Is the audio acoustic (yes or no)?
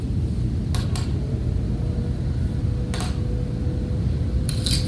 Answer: yes